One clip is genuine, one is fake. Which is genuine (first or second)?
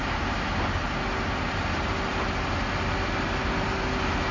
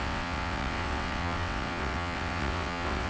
first